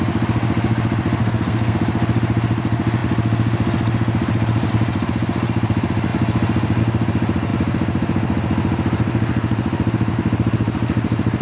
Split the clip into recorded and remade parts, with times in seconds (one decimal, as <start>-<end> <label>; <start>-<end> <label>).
0.0-1.2 recorded; 1.2-1.8 remade; 1.8-11.4 recorded